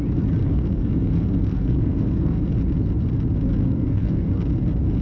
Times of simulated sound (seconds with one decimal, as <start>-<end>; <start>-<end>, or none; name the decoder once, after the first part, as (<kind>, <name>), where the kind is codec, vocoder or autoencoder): 0.4-2.6 (codec, SNAC); 3.6-4.3